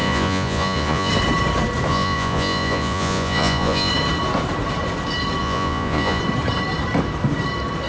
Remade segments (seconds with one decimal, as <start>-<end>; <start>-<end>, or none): 0.0-1.1; 1.9-3.9; 5.4-6.2